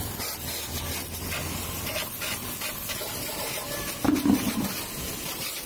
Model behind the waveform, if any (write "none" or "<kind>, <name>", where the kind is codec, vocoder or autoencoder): none